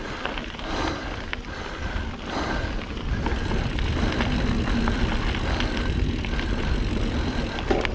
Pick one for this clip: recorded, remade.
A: recorded